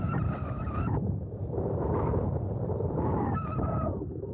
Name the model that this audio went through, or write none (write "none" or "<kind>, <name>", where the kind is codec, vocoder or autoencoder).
vocoder, BigVGAN v2